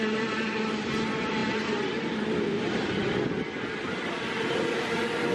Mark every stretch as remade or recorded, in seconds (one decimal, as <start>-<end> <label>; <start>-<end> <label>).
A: 0.0-5.3 remade